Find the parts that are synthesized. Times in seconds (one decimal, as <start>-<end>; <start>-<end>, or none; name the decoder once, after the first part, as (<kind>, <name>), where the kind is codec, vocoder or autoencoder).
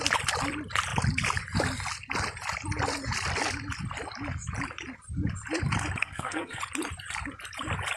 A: 6.0-6.6 (codec, SNAC)